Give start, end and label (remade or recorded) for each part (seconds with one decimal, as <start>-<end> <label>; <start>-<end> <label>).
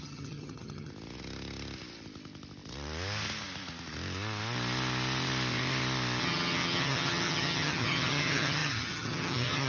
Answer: 0.0-0.9 remade; 0.9-6.2 recorded; 6.2-9.7 remade